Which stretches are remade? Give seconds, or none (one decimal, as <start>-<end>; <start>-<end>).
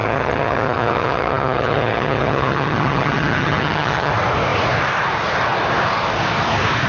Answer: 0.0-4.1